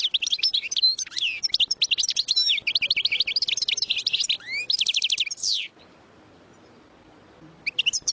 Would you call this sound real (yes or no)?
no